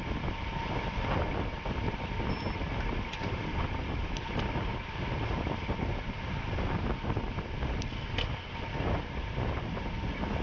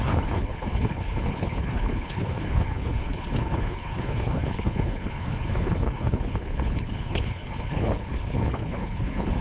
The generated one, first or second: second